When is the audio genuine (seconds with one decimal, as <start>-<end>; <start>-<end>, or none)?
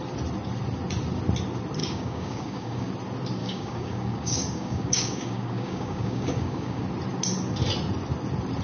0.0-1.8; 2.9-3.4; 6.8-8.6